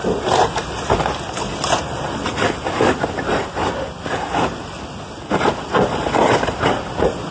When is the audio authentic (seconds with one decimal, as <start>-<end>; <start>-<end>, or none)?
0.0-7.3